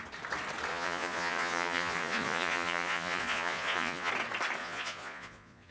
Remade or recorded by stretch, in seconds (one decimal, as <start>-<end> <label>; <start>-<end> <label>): 0.0-0.7 recorded; 0.7-4.1 remade; 4.1-4.6 recorded; 4.6-5.7 remade